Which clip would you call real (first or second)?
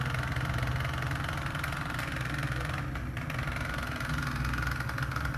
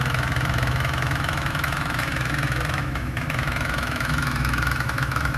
first